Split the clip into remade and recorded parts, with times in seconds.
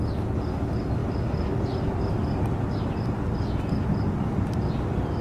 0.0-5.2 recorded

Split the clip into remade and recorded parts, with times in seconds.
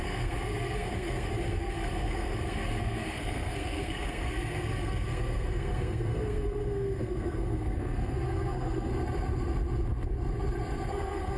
0.0-8.9 remade; 8.9-10.9 recorded; 10.9-11.4 remade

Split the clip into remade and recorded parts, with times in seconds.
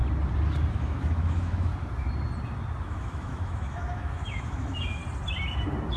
0.0-0.7 recorded; 0.7-1.7 remade; 1.7-2.8 recorded; 2.8-5.0 remade; 5.0-6.0 recorded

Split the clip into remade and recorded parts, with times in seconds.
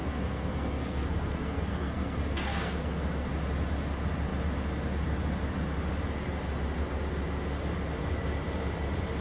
0.0-3.3 remade; 3.3-9.2 recorded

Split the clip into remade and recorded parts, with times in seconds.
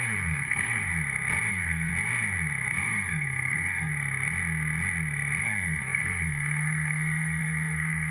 0.0-0.9 remade; 0.9-1.5 recorded; 1.5-1.9 remade; 1.9-2.7 recorded; 2.7-3.9 remade; 3.9-5.4 recorded; 5.4-8.1 remade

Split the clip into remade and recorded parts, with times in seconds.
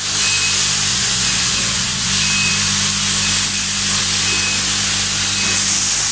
0.0-0.9 recorded; 0.9-2.1 remade; 2.1-6.1 recorded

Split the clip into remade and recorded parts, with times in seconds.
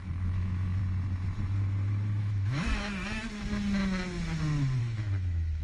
0.0-0.8 remade; 0.8-2.2 recorded; 2.2-2.7 remade; 2.7-4.8 recorded; 4.8-5.6 remade